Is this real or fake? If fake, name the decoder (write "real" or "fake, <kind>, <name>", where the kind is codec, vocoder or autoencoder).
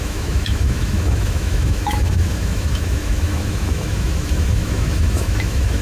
fake, autoencoder, DAC-VAE